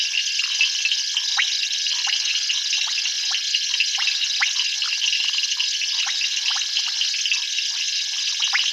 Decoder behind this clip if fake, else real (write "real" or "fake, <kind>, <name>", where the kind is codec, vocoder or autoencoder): real